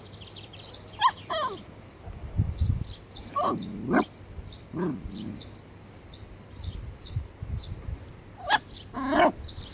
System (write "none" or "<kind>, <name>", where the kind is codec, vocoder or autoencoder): none